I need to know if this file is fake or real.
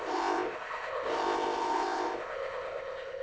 fake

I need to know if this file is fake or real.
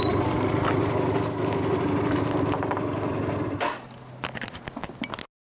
real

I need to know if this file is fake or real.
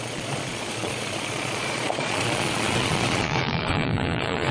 fake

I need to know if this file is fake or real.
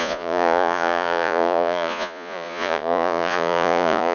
fake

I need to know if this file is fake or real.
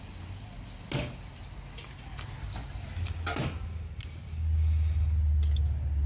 real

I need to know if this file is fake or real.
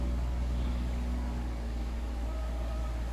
fake